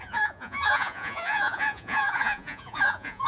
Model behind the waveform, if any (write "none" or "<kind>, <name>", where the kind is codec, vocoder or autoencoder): vocoder, Vocos